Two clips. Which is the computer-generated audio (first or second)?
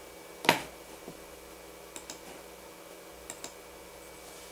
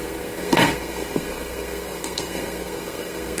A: second